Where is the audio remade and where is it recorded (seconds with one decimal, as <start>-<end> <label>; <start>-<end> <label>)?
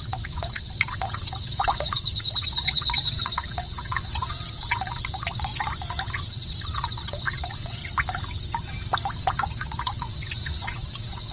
0.0-5.5 remade; 5.5-6.1 recorded; 6.1-7.8 remade; 7.8-9.2 recorded; 9.2-11.3 remade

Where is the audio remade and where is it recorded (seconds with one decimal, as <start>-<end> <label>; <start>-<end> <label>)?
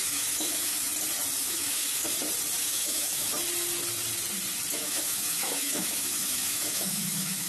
0.0-0.9 remade; 0.9-1.4 recorded; 1.4-2.1 remade; 2.1-2.6 recorded; 2.6-3.3 remade; 3.3-4.7 recorded; 4.7-7.5 remade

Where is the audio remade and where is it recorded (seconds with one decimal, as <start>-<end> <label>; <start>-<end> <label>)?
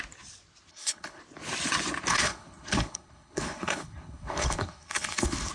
0.0-0.7 recorded; 0.7-1.2 remade; 1.2-2.1 recorded; 2.1-5.5 remade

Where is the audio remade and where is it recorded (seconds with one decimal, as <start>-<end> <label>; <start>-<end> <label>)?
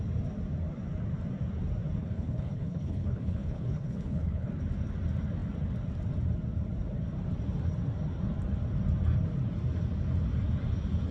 0.0-2.0 recorded; 2.0-4.5 remade; 4.5-11.1 recorded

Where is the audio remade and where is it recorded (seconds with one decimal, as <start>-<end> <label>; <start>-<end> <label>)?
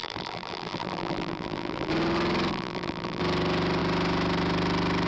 0.0-1.9 remade; 1.9-2.5 recorded; 2.5-3.2 remade; 3.2-5.1 recorded